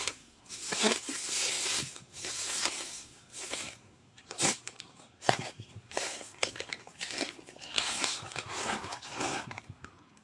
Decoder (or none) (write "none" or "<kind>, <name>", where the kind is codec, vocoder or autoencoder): codec, SNAC